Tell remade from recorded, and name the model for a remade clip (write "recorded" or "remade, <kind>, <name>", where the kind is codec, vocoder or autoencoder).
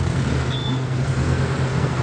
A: remade, codec, SNAC